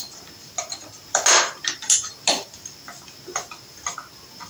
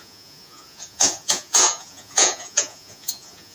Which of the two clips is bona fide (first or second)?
first